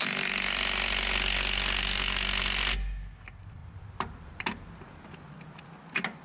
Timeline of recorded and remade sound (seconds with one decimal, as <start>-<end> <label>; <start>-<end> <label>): 0.0-3.6 recorded; 3.6-4.8 remade; 4.8-6.2 recorded